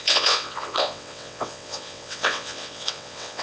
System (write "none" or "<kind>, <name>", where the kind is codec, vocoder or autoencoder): vocoder, WaveNeXt